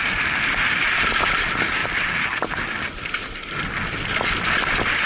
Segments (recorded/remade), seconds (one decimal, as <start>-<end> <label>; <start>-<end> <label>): 0.0-5.1 recorded